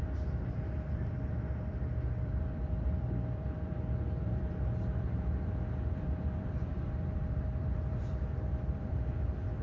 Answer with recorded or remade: remade